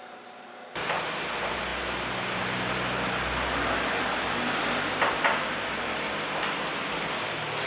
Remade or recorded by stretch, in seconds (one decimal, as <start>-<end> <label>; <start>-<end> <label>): 0.0-7.7 recorded